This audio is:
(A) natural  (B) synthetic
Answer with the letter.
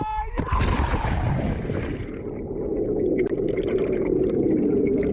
A